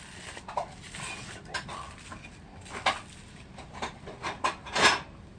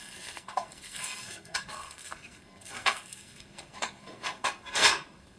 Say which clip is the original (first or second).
first